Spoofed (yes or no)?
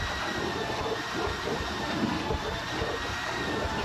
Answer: yes